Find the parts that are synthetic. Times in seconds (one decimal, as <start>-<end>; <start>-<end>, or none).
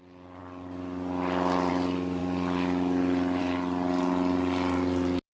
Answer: none